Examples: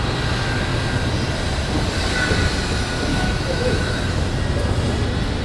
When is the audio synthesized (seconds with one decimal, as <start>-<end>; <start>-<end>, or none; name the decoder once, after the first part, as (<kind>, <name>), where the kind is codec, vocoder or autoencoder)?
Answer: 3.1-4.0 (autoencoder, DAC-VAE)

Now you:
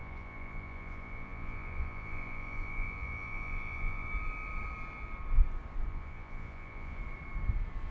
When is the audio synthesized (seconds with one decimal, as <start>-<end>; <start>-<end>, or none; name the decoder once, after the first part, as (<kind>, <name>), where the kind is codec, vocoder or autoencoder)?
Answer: 0.0-4.1 (vocoder, Vocos); 5.9-7.0

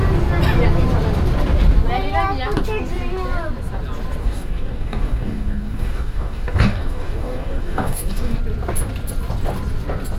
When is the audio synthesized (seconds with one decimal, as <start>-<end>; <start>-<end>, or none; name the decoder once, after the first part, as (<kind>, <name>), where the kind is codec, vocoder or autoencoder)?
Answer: 4.2-8.4 (codec, DAC)

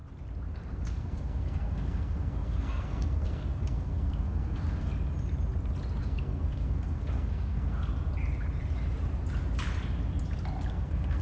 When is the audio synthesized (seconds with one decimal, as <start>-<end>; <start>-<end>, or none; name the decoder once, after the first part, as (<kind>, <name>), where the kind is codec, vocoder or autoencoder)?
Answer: 0.5-4.9 (codec, SNAC); 6.0-7.9; 10.7-11.2